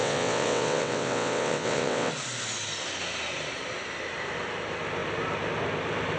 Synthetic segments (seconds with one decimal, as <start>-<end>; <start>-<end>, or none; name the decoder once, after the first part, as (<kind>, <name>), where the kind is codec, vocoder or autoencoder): 0.0-2.1 (vocoder, WaveNeXt)